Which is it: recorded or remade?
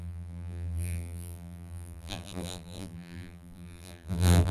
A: remade